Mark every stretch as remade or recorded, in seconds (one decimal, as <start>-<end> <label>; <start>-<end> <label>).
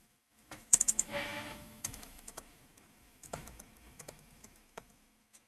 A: 0.0-5.5 remade